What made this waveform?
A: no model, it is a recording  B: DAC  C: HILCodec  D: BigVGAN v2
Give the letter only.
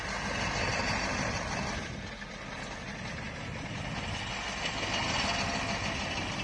A